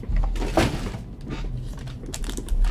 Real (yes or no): yes